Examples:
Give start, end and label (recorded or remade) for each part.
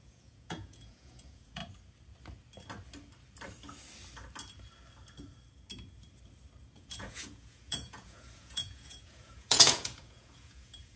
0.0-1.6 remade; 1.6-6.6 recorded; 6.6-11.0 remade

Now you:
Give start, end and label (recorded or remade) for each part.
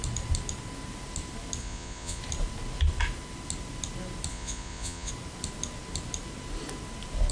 0.0-1.6 recorded; 1.6-2.2 remade; 2.2-4.3 recorded; 4.3-5.1 remade; 5.1-7.3 recorded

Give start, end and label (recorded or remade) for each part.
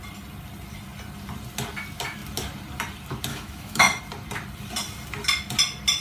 0.0-3.3 recorded; 3.3-4.0 remade; 4.0-6.0 recorded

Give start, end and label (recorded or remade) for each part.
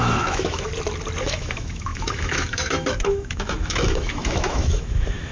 0.0-0.7 remade; 0.7-1.2 recorded; 1.2-5.3 remade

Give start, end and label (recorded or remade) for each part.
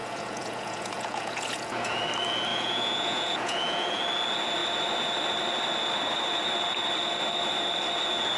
0.0-2.0 remade; 2.0-2.5 recorded; 2.5-4.0 remade; 4.0-8.4 recorded